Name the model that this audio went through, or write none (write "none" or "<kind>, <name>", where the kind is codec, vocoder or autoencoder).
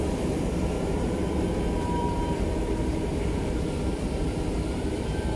vocoder, BigVGAN v2